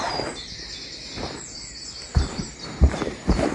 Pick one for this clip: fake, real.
real